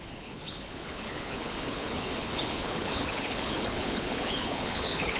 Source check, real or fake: fake